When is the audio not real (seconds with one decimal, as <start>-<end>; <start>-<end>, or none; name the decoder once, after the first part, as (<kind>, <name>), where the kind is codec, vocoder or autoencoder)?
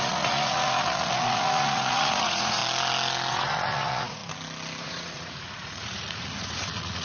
0.0-2.6 (vocoder, Vocos); 3.3-4.2; 4.8-7.0